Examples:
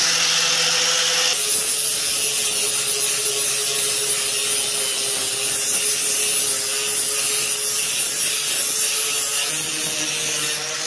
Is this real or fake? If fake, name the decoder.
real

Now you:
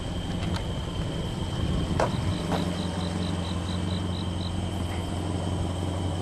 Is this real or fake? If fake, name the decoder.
real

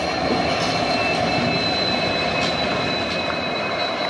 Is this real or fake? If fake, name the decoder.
real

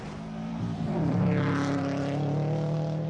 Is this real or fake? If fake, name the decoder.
fake, vocoder, BigVGAN v2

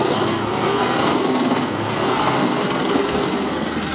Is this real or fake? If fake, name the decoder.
fake, codec, SNAC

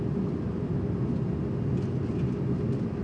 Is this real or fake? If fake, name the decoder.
real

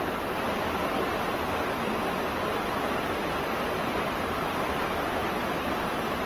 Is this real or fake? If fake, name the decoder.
real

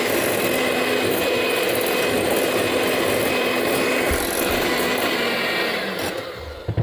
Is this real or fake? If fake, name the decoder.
real